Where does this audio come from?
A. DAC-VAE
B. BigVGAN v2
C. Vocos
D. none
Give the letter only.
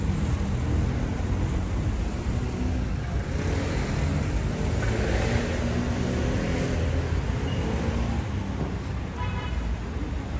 D